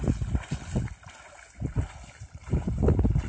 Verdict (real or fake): real